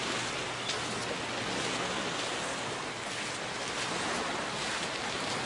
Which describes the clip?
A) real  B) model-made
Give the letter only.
A